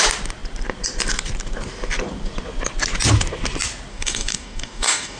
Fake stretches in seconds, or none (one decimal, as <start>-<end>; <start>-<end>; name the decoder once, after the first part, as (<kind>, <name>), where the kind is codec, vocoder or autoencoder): 3.9-5.2 (codec, DAC)